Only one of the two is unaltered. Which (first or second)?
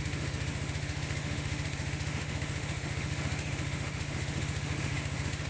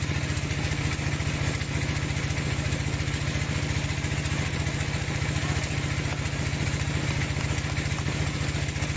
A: second